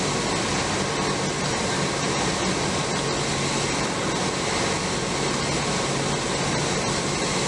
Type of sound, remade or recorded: recorded